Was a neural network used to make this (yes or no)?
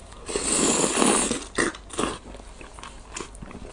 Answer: no